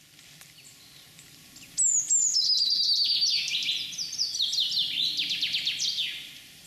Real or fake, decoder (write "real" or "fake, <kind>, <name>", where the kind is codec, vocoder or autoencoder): real